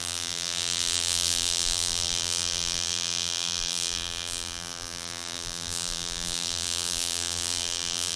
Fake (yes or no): yes